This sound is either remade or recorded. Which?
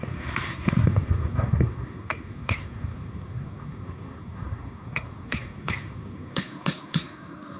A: remade